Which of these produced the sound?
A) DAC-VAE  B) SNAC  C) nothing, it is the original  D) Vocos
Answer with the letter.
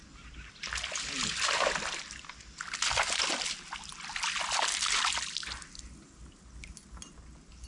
C